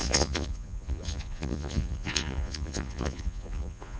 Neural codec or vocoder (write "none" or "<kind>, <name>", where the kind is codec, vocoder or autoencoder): vocoder, Vocos